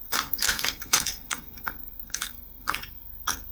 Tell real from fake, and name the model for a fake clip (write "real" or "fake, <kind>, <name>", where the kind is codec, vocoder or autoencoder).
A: fake, codec, SNAC